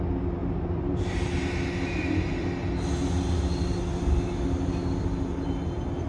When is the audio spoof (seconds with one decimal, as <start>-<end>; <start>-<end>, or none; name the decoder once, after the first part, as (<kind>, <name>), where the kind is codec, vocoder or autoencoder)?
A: 0.4-1.5 (vocoder, BigVGAN v2)